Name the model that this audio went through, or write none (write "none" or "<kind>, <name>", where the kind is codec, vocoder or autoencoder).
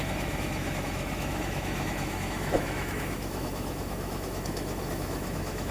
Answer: autoencoder, DAC-VAE